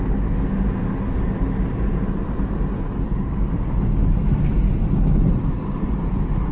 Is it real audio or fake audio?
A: real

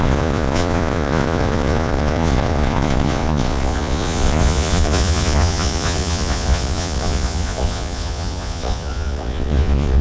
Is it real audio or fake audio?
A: fake